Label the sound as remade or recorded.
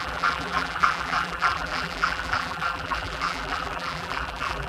remade